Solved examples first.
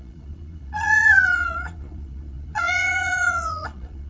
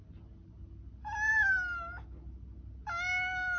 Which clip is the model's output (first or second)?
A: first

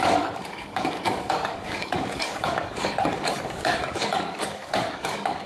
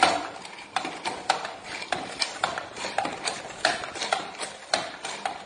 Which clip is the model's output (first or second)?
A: first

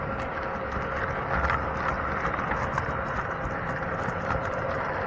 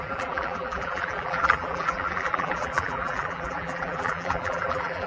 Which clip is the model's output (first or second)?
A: second